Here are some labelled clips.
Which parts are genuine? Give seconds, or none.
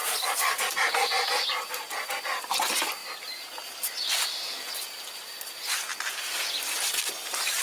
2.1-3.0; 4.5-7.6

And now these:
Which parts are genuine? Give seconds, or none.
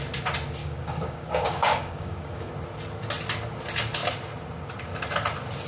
0.0-0.6; 2.5-5.7